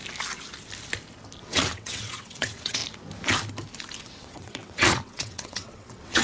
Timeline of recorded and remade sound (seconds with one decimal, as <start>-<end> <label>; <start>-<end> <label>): 0.0-1.4 recorded; 1.4-2.8 remade; 2.8-4.0 recorded; 4.0-6.2 remade